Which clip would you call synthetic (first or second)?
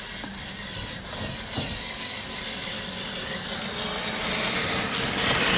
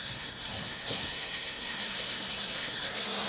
second